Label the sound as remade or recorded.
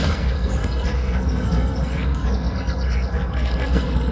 remade